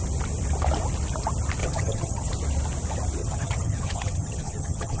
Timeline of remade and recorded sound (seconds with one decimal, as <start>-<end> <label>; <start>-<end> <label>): 0.0-1.6 recorded; 1.6-2.3 remade; 2.3-3.2 recorded; 3.2-5.0 remade